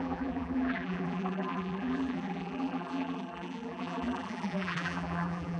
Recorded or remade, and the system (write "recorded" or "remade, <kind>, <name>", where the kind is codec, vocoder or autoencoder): remade, vocoder, BigVGAN v2